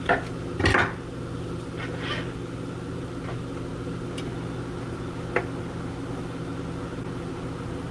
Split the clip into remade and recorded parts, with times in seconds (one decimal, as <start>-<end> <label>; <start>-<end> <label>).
0.0-7.9 recorded